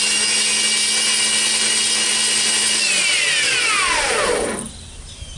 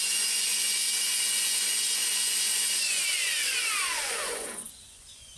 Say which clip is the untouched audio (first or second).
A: first